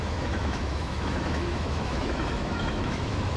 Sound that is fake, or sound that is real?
fake